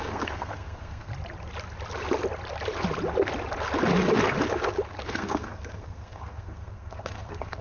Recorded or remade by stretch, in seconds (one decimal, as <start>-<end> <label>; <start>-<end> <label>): 0.0-1.1 remade; 1.1-5.1 recorded; 5.1-7.6 remade